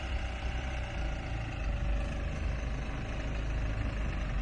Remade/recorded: recorded